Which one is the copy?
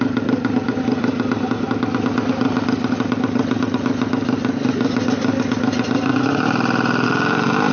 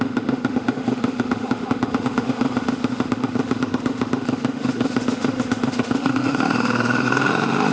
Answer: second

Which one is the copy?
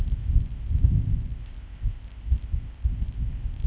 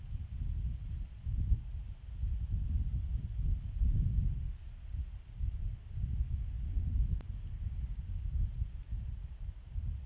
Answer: first